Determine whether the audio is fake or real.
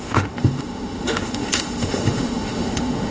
fake